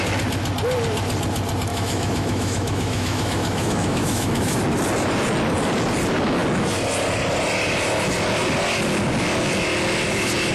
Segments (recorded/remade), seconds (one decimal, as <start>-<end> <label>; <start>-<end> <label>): 0.0-1.7 recorded; 1.7-4.6 remade; 4.6-10.5 recorded